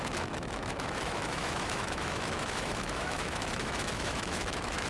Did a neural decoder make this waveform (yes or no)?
yes